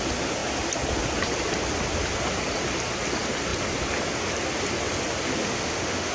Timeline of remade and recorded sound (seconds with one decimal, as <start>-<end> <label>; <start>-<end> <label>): 0.0-5.4 recorded; 5.4-6.1 remade